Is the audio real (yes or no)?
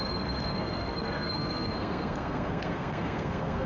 no